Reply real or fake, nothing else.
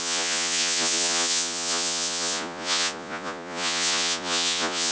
fake